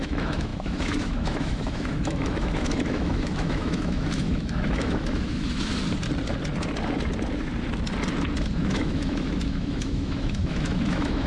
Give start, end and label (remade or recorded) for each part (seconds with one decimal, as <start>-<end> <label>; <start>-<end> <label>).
0.0-5.7 remade; 5.7-8.7 recorded; 8.7-11.3 remade

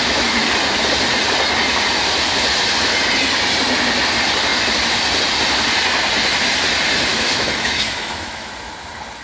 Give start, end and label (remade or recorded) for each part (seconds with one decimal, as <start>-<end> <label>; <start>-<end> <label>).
0.0-0.5 remade; 0.5-7.1 recorded; 7.1-8.5 remade; 8.5-9.2 recorded

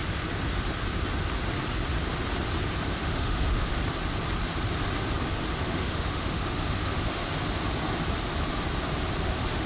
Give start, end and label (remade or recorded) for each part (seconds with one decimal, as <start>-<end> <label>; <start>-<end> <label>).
0.0-3.0 recorded; 3.0-3.7 remade; 3.7-5.6 recorded; 5.6-7.2 remade; 7.2-9.2 recorded; 9.2-9.7 remade